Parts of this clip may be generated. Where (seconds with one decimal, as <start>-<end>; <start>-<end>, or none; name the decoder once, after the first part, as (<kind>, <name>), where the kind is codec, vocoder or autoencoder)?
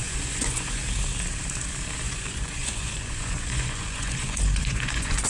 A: 0.0-0.8 (vocoder, Vocos); 2.0-5.3